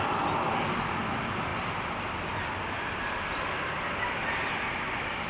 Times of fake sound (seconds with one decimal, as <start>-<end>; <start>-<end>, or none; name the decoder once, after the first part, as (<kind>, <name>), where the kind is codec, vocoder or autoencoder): none